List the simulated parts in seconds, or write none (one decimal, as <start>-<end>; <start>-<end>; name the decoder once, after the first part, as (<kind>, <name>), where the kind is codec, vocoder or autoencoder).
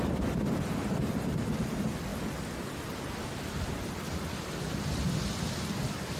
none